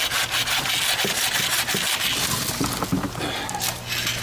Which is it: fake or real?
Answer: real